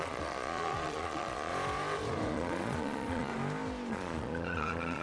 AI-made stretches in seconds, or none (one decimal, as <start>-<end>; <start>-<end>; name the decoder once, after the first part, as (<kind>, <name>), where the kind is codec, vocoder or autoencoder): 0.0-1.5 (vocoder, Vocos); 2.3-3.3; 3.9-5.0